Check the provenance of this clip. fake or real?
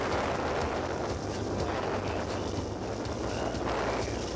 real